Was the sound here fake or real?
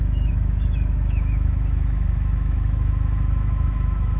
fake